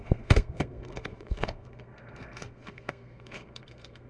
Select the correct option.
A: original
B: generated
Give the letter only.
B